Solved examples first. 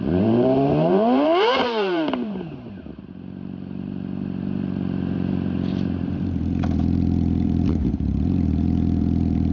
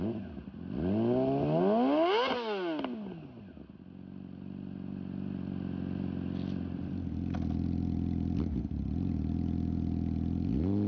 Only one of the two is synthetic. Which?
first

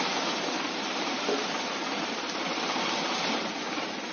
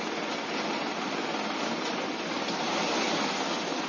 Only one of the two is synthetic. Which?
first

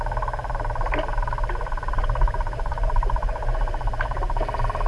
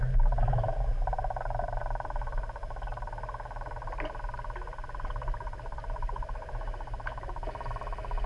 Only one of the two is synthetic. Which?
first